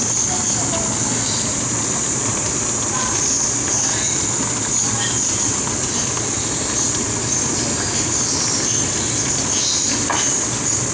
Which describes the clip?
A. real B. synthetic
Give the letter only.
A